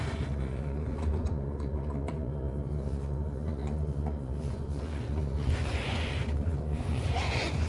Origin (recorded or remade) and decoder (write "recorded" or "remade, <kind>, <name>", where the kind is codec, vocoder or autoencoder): remade, vocoder, Vocos